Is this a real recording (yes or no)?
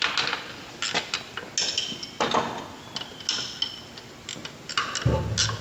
yes